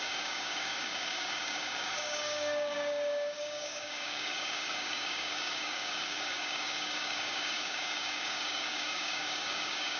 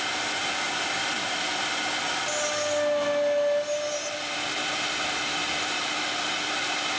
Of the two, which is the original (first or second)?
second